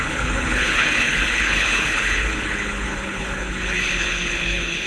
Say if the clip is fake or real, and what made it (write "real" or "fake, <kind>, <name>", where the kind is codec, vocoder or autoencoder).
fake, codec, HILCodec